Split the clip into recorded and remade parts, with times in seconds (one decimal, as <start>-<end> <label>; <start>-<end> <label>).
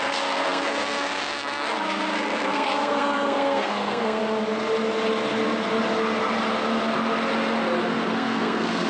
0.0-4.2 remade; 4.2-8.1 recorded; 8.1-8.9 remade